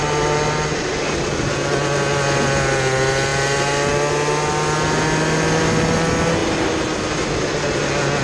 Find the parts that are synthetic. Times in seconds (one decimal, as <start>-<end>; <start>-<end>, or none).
none